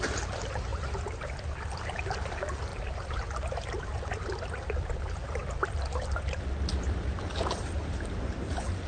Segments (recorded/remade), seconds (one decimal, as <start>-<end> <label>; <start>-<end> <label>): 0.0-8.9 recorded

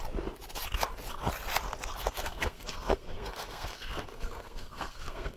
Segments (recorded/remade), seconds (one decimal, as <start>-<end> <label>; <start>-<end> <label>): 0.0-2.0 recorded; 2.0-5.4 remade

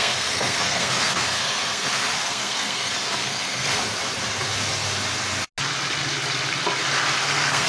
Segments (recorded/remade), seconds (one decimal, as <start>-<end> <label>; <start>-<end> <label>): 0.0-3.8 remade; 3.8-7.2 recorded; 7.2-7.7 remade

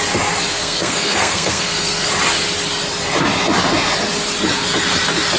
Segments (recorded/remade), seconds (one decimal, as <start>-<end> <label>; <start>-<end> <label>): 0.0-0.5 recorded; 0.5-2.1 remade; 2.1-5.4 recorded

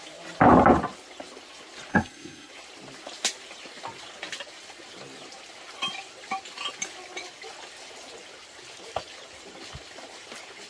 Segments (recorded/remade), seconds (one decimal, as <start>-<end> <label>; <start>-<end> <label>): 0.0-1.9 recorded; 1.9-2.5 remade; 2.5-10.7 recorded

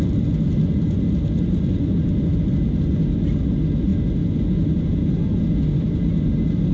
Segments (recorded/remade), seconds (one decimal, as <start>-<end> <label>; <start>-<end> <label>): 0.0-6.7 recorded

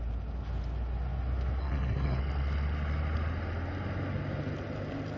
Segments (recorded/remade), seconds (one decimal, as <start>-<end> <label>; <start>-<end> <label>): 0.0-1.6 recorded; 1.6-2.2 remade; 2.2-5.2 recorded

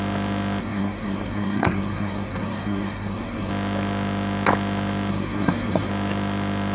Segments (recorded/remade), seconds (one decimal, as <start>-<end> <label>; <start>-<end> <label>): 0.0-0.6 recorded; 0.6-3.5 remade; 3.5-5.1 recorded; 5.1-5.9 remade; 5.9-6.7 recorded